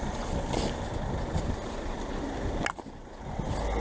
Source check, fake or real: real